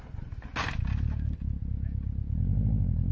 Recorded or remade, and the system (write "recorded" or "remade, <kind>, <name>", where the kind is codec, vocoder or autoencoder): recorded